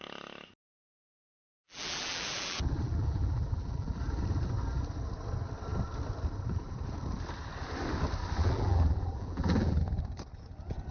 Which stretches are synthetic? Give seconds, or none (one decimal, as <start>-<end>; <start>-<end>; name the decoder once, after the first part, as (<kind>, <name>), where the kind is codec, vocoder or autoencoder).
1.0-4.2 (vocoder, BigVGAN v2); 8.4-9.8